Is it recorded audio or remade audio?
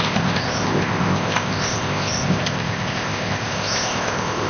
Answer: remade